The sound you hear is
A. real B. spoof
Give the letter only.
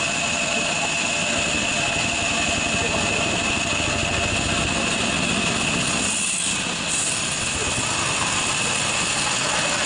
A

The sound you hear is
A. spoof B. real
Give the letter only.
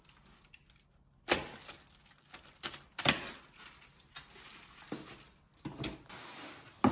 B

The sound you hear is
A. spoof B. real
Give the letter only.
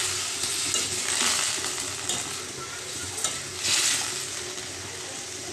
B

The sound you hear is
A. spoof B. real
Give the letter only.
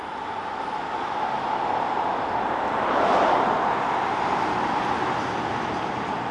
B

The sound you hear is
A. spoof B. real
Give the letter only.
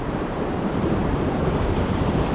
A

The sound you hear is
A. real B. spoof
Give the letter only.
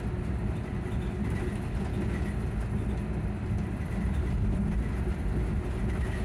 A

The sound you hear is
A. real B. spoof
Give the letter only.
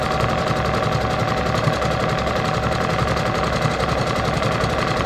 A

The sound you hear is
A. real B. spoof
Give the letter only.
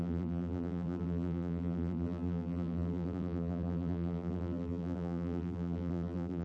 B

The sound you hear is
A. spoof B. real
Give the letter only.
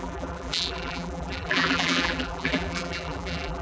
A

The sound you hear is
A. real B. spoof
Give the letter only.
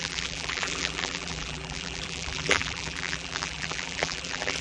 B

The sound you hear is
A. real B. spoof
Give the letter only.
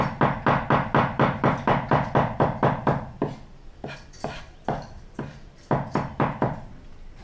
B